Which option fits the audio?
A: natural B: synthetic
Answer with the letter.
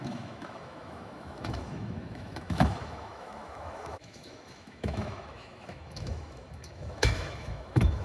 B